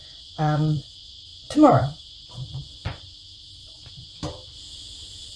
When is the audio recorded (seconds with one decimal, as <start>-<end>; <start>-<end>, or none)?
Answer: 4.2-5.4